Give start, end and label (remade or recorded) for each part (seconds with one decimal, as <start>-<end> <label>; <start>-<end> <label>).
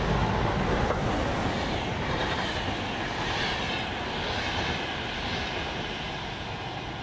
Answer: 0.0-7.0 recorded